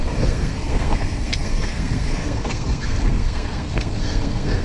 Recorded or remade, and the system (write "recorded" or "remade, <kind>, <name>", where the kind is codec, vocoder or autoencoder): remade, codec, SNAC